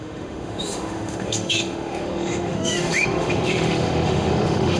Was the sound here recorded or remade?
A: remade